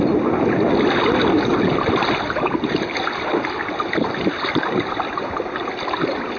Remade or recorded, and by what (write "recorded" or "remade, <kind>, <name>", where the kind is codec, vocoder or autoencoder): recorded